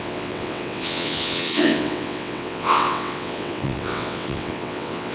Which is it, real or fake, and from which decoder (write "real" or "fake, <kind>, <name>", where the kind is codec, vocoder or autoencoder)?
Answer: fake, vocoder, WaveNeXt